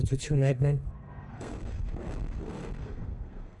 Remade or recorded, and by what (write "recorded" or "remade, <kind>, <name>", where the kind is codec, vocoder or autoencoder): remade, codec, SNAC